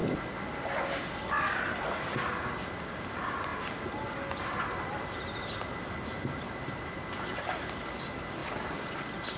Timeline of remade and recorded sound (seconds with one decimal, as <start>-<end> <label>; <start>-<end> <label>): 0.0-9.4 recorded